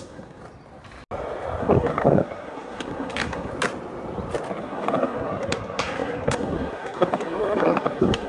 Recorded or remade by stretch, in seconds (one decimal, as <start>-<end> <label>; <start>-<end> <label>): 0.0-0.4 remade; 0.4-1.6 recorded; 1.6-3.5 remade; 3.5-4.6 recorded; 4.6-8.3 remade